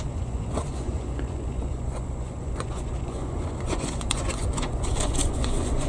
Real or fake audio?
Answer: fake